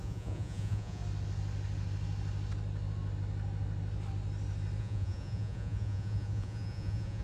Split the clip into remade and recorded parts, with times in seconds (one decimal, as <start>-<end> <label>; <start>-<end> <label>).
0.0-1.0 remade; 1.0-4.8 recorded; 4.8-7.2 remade